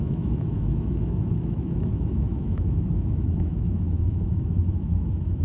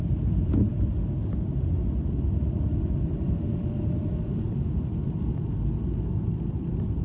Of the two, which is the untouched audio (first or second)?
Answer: second